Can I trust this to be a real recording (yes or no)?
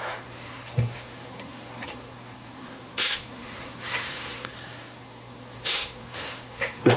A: no